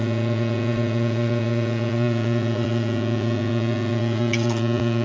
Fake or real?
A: fake